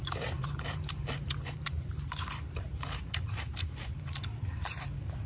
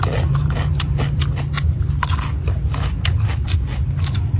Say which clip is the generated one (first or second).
first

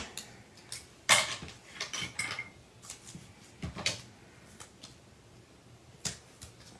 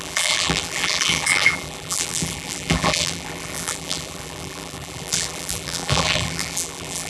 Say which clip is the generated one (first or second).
second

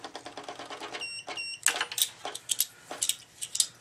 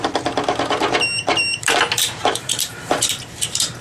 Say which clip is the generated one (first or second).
second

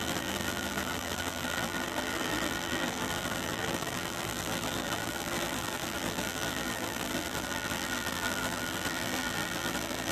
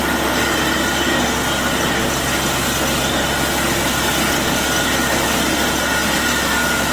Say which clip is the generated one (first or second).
first